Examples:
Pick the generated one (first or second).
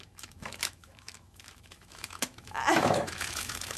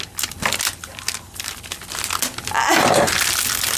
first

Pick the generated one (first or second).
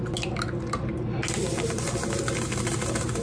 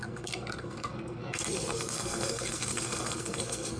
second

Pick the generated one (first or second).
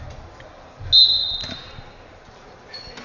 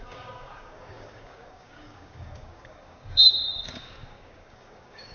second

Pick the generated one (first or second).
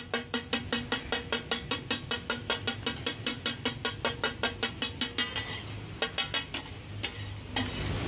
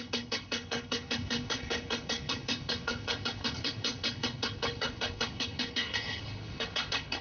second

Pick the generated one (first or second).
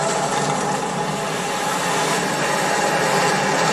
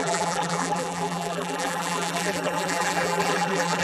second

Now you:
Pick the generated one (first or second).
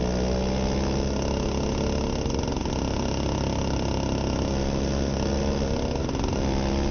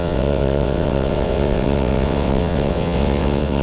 second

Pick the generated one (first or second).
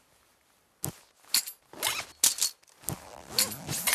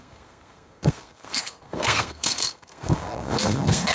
second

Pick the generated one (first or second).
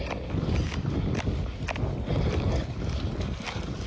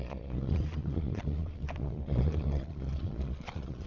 second